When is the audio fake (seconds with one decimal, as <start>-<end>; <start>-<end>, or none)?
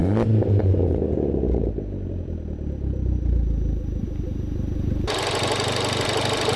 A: none